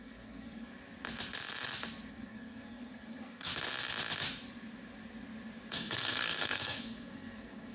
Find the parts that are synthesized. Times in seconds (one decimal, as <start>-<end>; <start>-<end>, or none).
0.0-0.7; 2.1-3.5; 5.7-7.7